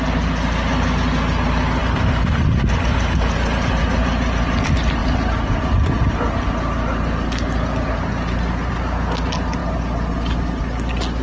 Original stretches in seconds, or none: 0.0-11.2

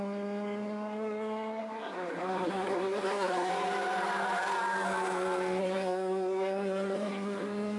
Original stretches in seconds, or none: 3.5-5.6

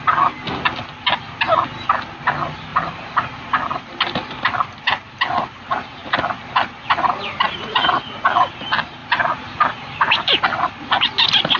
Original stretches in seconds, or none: 0.0-2.7; 3.9-9.0; 10.4-11.6

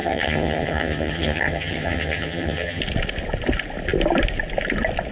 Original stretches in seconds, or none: 2.8-5.1

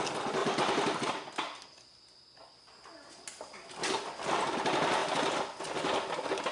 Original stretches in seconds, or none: 0.0-0.4; 2.4-5.0; 5.6-6.5

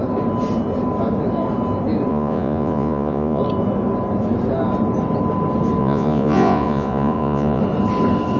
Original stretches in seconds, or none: 0.0-2.1; 3.4-5.8; 7.6-8.4

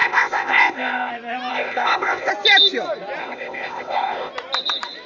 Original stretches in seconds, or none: 1.1-1.5; 2.3-3.2; 4.3-5.1